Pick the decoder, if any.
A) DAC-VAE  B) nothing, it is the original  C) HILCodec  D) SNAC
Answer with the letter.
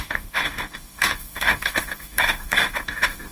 A